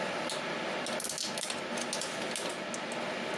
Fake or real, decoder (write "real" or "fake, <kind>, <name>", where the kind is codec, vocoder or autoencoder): real